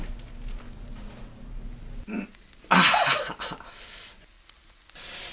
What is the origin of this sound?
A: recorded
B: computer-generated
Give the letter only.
A